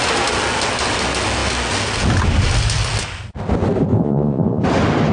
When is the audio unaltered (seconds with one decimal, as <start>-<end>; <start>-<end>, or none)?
0.0-3.9; 4.6-5.1